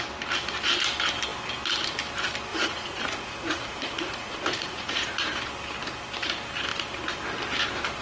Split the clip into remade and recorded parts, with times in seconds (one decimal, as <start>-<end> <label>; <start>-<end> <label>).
0.0-2.5 recorded; 2.5-5.3 remade; 5.3-8.0 recorded